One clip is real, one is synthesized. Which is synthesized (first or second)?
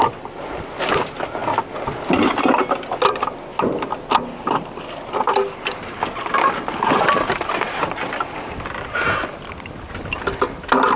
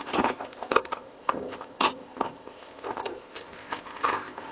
second